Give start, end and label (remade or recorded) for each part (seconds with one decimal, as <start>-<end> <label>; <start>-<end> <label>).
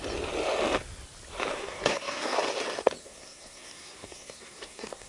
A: 0.0-1.5 recorded; 1.5-2.4 remade; 2.4-3.0 recorded; 3.0-5.1 remade